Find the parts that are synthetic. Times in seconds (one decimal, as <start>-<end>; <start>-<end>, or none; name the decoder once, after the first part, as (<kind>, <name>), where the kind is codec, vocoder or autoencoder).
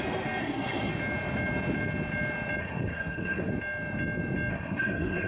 0.4-0.9 (codec, SNAC); 2.6-3.5; 4.5-5.3